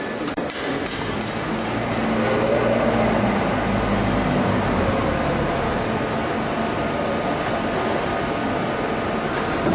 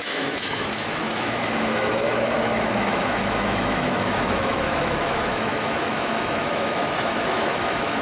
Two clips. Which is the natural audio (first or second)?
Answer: first